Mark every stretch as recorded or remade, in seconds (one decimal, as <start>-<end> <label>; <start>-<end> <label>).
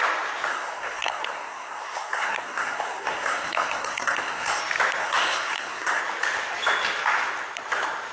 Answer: 0.0-0.5 recorded; 0.5-4.6 remade; 4.6-5.0 recorded; 5.0-6.0 remade; 6.0-8.1 recorded